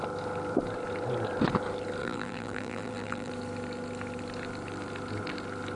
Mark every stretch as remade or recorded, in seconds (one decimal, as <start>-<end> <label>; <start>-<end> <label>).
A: 0.0-2.0 recorded; 2.0-3.3 remade; 3.3-5.8 recorded